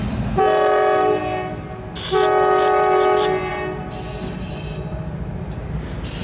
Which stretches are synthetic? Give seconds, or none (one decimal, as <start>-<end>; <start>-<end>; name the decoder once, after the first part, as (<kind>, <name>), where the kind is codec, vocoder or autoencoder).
none